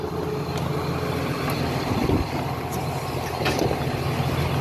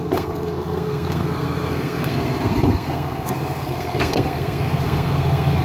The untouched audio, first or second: first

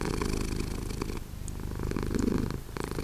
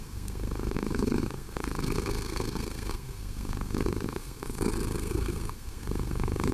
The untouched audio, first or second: first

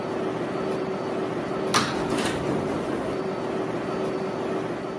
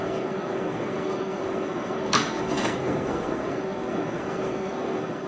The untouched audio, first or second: first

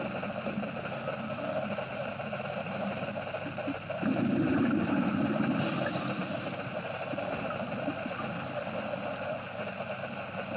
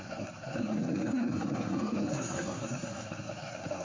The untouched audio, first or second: first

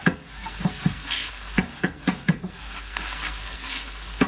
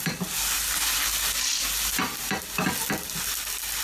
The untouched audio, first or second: second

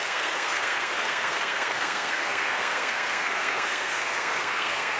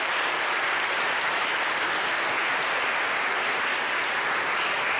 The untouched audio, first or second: second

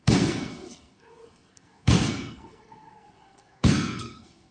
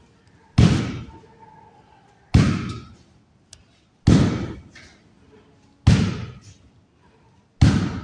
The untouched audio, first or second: second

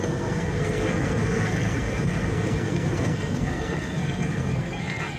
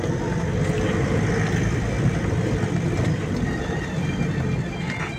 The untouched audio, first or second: second